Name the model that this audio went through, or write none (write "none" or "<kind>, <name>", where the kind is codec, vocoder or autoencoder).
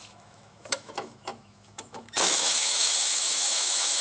autoencoder, DAC-VAE